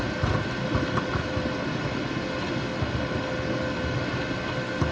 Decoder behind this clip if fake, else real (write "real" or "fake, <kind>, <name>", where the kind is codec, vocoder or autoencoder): real